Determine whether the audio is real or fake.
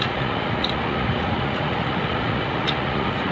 fake